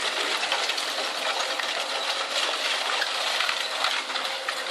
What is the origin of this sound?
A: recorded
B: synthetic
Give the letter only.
A